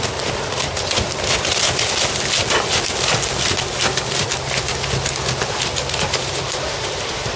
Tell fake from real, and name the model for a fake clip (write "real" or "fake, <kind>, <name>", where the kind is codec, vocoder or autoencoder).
real